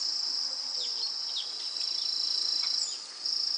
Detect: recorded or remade recorded